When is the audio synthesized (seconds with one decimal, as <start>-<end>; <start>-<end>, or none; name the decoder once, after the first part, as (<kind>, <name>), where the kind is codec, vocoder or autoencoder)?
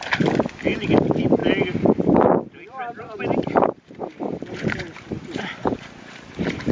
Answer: 2.7-6.7 (vocoder, BigVGAN v2)